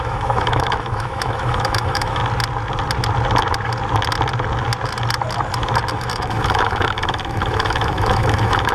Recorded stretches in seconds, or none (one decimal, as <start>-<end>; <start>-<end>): 2.2-5.9